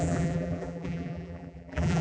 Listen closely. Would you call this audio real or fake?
fake